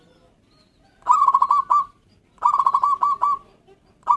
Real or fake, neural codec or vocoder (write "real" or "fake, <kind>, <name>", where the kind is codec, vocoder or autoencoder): real